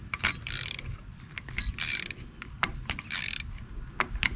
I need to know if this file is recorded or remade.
recorded